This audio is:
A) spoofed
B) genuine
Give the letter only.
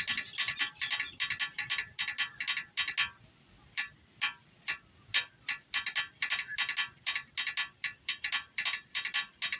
B